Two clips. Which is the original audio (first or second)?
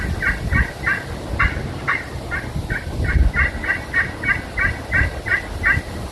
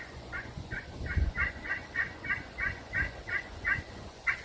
first